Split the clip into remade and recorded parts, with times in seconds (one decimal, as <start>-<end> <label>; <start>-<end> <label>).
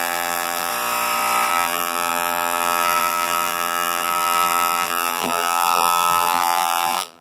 0.0-0.7 remade; 0.7-1.5 recorded; 1.5-7.2 remade